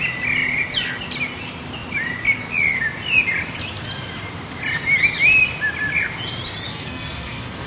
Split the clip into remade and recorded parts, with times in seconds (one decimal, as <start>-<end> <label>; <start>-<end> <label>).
0.0-6.7 recorded; 6.7-7.7 remade